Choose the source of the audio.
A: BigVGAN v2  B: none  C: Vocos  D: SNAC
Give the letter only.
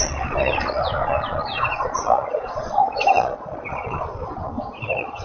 C